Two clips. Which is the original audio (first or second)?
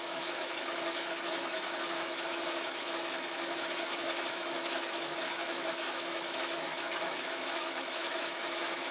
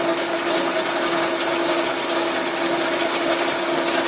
second